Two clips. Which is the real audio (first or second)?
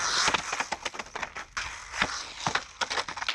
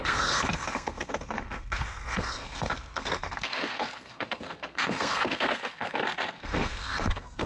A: first